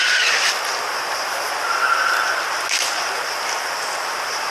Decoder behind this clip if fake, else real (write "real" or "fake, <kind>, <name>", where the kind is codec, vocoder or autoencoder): real